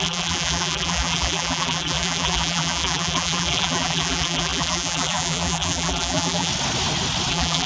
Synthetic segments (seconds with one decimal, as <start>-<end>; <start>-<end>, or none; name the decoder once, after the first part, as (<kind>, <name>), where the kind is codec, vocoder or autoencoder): 0.0-6.5 (vocoder, BigVGAN v2); 7.3-7.7

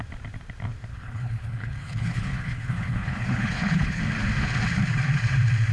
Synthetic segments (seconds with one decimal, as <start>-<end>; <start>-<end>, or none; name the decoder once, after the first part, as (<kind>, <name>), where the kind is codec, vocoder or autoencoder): 0.9-4.0 (codec, HILCodec)

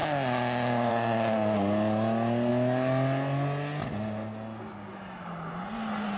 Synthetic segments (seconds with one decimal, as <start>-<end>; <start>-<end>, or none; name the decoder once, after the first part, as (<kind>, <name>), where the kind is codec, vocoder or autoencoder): none

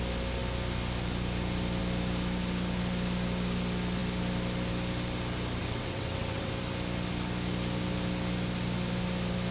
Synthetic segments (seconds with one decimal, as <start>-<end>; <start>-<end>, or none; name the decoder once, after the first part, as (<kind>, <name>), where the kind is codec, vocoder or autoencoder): 5.6-6.5 (vocoder, WaveNeXt)